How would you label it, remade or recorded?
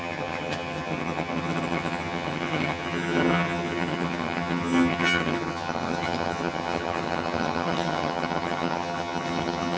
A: remade